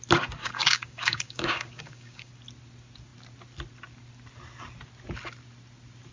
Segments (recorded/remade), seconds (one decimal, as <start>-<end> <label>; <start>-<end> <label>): 0.0-0.4 recorded; 0.4-2.3 remade; 2.3-6.1 recorded